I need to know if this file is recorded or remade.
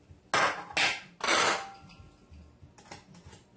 recorded